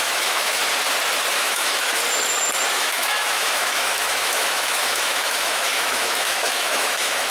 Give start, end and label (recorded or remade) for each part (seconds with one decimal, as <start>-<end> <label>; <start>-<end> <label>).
0.0-0.6 remade; 0.6-1.3 recorded; 1.3-2.0 remade; 2.0-2.7 recorded; 2.7-7.3 remade